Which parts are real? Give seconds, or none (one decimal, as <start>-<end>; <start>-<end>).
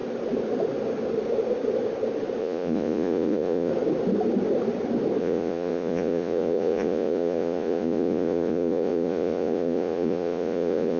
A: 0.0-2.4; 3.7-5.2